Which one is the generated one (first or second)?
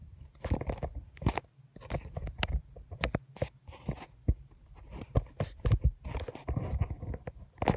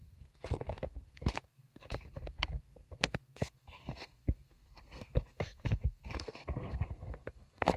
second